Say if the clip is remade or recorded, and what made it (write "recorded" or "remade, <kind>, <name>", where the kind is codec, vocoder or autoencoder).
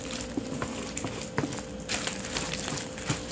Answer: recorded